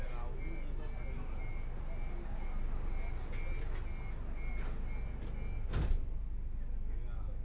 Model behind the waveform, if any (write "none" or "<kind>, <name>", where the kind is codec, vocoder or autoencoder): none